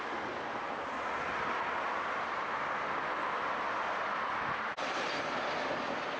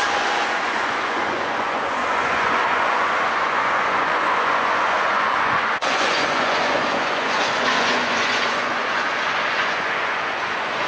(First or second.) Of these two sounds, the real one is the first